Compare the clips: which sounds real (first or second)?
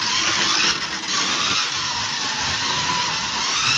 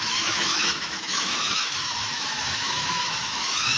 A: first